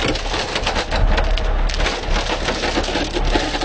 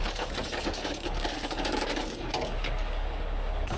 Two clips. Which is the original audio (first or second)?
first